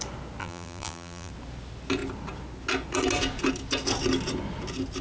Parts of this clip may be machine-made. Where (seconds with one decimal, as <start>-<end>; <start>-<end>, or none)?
0.4-1.3